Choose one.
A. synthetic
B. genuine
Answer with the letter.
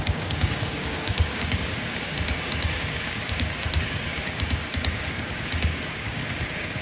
A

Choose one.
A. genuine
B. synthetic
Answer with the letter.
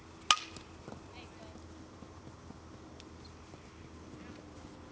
A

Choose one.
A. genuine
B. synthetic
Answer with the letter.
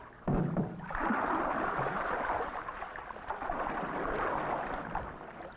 A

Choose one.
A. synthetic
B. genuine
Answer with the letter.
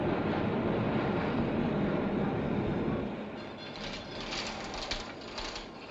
B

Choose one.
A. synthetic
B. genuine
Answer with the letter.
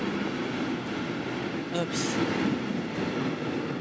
B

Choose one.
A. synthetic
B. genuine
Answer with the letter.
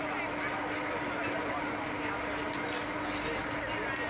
B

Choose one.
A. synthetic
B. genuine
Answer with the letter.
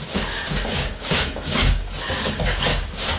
A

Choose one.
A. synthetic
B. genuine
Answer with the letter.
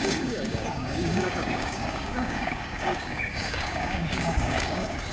A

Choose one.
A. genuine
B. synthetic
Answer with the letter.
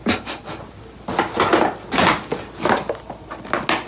A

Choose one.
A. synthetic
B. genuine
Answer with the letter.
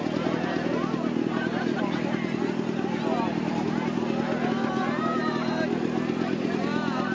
B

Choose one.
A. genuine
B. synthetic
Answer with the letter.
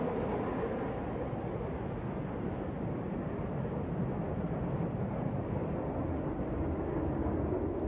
A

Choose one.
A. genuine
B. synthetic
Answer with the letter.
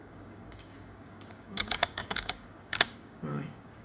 B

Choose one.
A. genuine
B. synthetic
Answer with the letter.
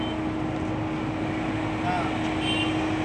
A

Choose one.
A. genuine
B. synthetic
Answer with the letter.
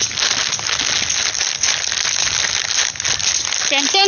A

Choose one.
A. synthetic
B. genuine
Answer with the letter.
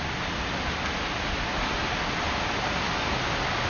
B